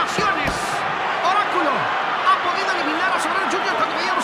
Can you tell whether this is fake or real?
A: real